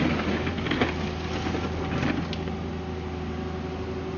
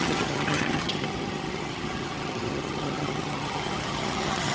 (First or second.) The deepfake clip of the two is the second